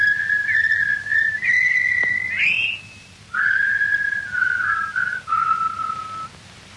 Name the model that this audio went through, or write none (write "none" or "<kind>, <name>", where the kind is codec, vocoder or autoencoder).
none